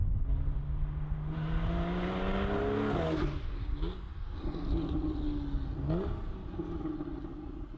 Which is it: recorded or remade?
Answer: recorded